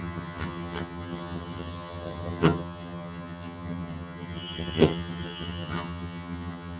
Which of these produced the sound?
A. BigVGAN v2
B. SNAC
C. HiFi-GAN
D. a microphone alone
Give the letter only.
C